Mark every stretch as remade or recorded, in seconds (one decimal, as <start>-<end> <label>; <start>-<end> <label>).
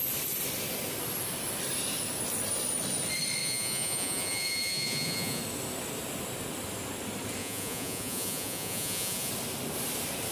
0.0-3.4 recorded; 3.4-5.4 remade; 5.4-7.4 recorded; 7.4-9.3 remade; 9.3-10.3 recorded